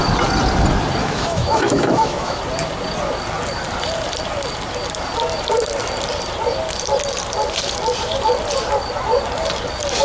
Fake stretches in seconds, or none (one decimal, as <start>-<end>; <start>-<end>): 1.0-2.4